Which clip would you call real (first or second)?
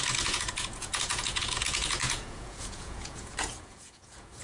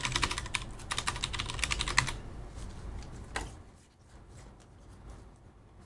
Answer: second